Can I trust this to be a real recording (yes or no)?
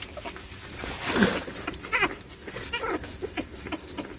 yes